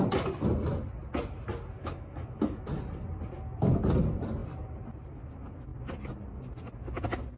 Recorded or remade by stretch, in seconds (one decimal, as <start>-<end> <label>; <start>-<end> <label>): 0.0-1.8 recorded; 1.8-2.8 remade; 2.8-7.4 recorded